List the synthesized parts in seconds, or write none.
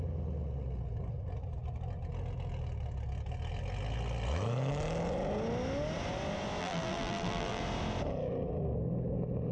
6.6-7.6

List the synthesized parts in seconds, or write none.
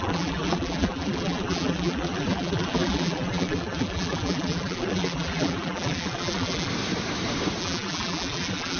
0.0-6.7; 7.6-8.8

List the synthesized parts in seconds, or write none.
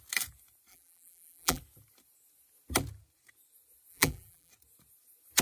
0.7-1.6; 3.9-4.5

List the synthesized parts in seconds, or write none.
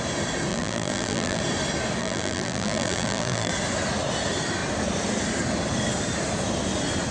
0.5-1.4; 2.0-3.5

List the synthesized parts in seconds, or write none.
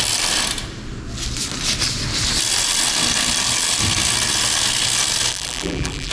5.3-6.1